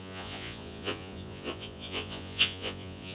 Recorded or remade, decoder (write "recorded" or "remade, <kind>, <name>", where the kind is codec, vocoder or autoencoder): remade, vocoder, Vocos